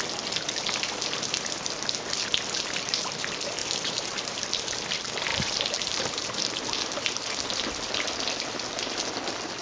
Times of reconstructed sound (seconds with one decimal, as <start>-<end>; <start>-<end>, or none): 3.6-4.4; 5.3-6.8

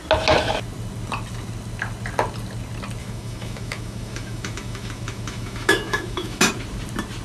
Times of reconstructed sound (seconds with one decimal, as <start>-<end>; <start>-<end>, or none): 3.0-6.5

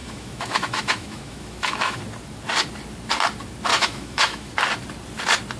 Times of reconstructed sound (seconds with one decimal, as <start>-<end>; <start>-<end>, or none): 0.0-2.0; 3.7-4.5

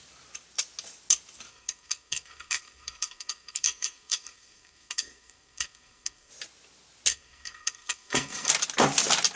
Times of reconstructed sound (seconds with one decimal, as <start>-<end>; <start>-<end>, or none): 1.5-6.3; 7.1-8.5

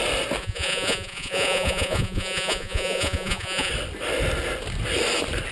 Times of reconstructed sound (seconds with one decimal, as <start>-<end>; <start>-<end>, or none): 0.4-3.7

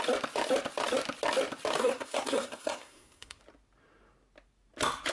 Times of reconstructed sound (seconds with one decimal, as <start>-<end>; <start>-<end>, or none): 1.8-3.4

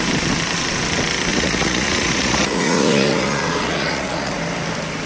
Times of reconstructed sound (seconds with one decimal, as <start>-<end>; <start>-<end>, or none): 1.3-4.4

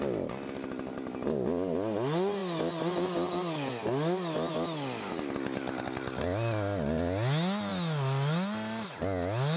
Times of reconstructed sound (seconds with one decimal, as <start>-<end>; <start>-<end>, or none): none